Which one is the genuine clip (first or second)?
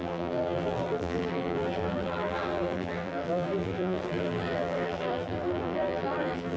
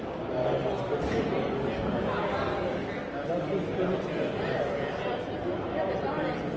second